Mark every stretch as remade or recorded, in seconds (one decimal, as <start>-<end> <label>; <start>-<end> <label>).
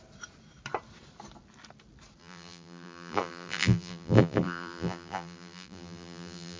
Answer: 0.0-2.2 recorded; 2.2-6.6 remade